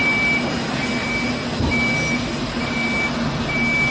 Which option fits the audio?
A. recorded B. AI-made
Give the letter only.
A